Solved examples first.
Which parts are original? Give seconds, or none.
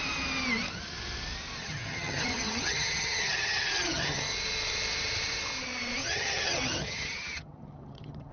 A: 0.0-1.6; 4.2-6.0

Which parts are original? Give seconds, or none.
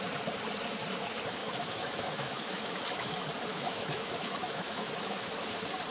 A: 0.0-1.4; 3.1-3.5; 5.3-5.9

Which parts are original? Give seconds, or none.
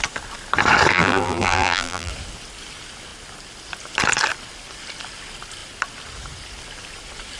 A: 0.0-0.9; 2.1-7.4